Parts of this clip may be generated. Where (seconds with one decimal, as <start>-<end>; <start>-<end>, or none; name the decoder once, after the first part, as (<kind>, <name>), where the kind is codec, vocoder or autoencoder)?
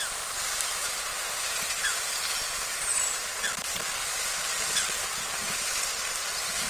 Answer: none